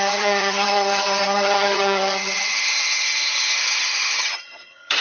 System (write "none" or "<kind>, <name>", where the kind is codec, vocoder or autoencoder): vocoder, HiFi-GAN